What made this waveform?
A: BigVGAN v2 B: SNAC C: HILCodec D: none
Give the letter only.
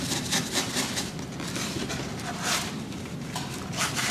A